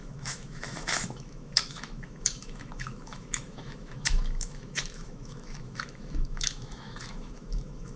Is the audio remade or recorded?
remade